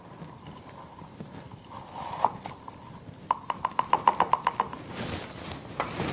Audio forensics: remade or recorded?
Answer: recorded